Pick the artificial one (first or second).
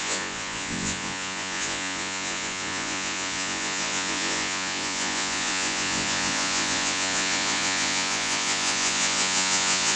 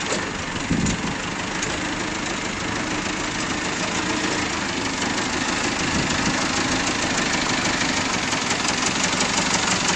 first